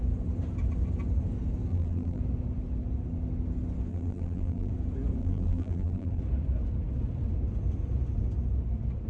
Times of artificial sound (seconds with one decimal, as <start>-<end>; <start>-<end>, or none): 1.7-2.2; 3.9-4.7; 5.2-6.2